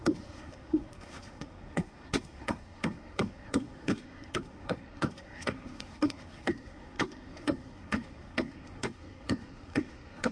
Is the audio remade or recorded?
remade